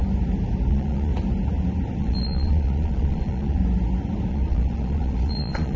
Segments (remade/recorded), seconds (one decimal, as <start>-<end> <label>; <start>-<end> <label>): 0.0-0.7 recorded; 0.7-1.1 remade; 1.1-2.0 recorded; 2.0-3.6 remade; 3.6-4.3 recorded; 4.3-5.8 remade